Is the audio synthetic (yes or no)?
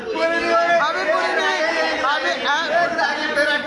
no